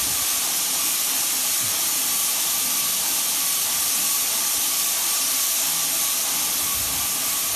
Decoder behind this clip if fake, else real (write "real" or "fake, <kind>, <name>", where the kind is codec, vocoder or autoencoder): real